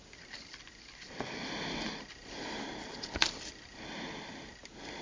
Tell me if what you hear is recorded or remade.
recorded